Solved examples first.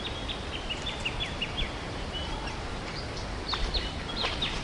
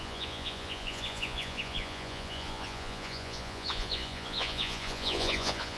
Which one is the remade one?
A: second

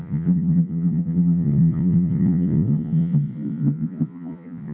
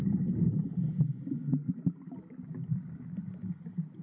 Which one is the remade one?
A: first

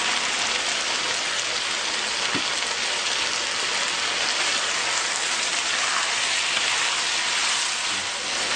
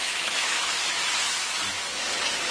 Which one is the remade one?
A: second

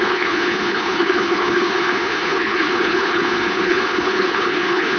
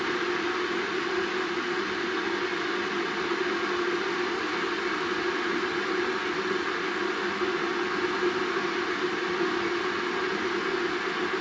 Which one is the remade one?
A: first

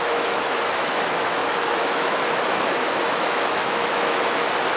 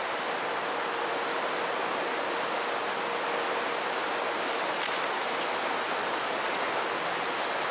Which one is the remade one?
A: first